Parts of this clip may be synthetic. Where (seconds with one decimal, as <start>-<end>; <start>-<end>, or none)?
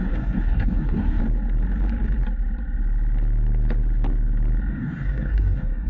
0.0-1.2; 4.7-5.9